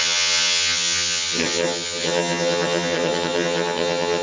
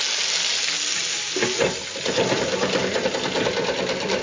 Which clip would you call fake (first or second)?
first